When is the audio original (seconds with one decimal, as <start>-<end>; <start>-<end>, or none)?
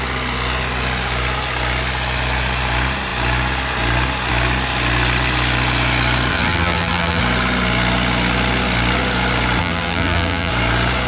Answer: 0.0-6.3; 7.2-9.6; 10.5-11.1